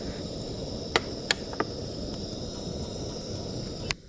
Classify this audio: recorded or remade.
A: recorded